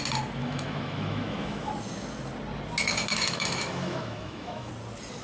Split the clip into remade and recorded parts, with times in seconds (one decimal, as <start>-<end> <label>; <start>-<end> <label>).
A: 0.0-0.4 recorded; 0.4-1.7 remade; 1.7-3.1 recorded; 3.1-4.7 remade; 4.7-5.2 recorded